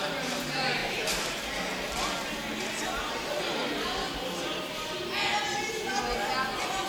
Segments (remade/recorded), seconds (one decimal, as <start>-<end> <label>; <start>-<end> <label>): 0.0-0.8 recorded; 0.8-1.4 remade; 1.4-6.9 recorded